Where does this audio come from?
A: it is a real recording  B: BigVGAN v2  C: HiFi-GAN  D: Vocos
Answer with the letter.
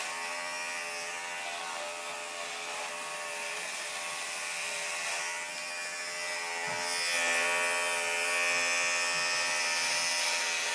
A